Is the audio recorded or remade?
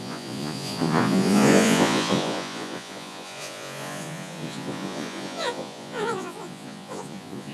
remade